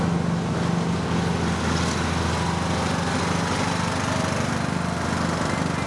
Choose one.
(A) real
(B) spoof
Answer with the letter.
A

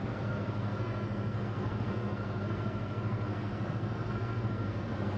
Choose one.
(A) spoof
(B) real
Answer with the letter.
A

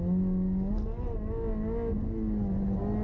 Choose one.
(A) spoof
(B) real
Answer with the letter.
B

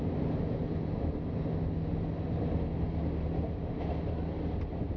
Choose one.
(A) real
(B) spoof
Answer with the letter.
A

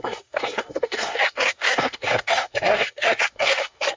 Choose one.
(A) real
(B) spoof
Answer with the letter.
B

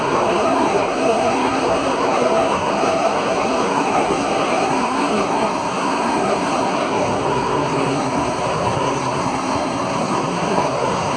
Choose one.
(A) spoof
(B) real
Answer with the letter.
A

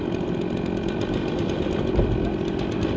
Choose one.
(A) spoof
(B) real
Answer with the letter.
B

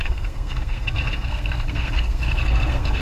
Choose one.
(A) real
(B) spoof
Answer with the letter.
B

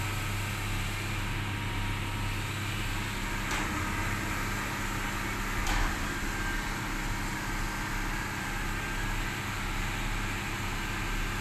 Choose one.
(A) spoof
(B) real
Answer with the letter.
B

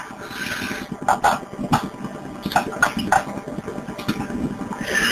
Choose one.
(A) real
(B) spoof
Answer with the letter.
A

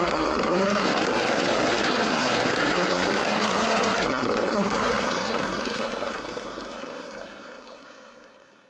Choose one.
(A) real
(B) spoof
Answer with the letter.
B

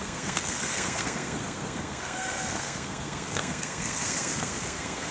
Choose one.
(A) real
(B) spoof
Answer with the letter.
B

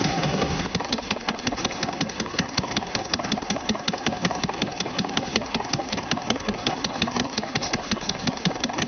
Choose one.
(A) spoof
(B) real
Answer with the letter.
A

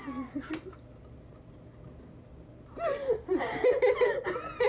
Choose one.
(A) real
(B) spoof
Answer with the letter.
A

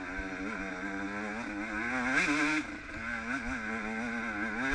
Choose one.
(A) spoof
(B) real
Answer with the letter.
B